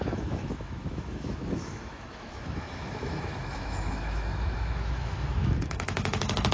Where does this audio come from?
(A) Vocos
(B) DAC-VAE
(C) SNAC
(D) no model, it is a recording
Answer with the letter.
B